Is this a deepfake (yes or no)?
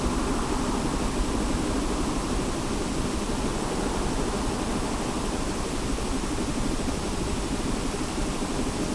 no